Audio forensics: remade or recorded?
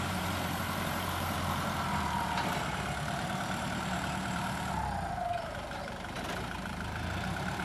remade